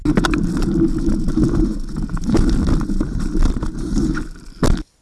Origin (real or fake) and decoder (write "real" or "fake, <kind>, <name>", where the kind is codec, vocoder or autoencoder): real